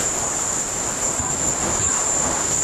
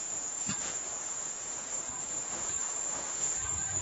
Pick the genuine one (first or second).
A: first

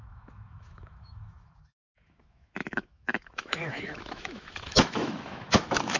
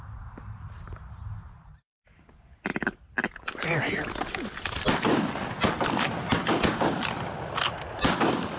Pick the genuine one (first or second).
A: second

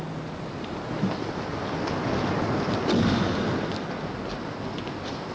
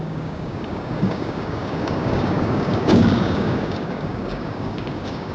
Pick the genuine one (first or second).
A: first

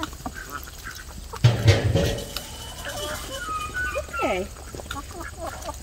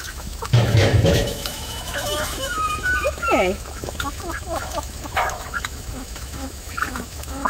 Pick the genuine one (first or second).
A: first